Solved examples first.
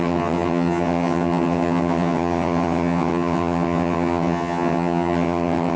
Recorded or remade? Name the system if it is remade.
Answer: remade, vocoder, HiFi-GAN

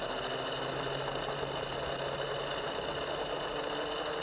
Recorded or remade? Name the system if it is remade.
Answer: recorded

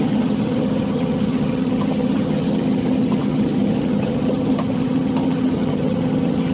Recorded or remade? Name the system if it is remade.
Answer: remade, vocoder, HiFi-GAN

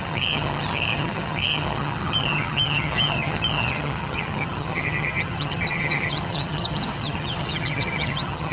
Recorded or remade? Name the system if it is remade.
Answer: remade, vocoder, HiFi-GAN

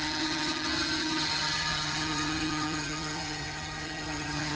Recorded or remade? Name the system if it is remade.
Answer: remade, vocoder, HiFi-GAN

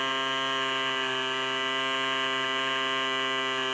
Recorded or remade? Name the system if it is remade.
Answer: recorded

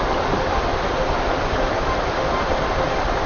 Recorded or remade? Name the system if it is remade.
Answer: recorded